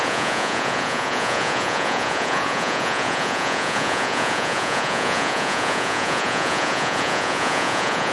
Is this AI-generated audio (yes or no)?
yes